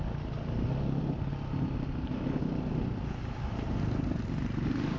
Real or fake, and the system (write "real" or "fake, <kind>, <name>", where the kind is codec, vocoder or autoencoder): real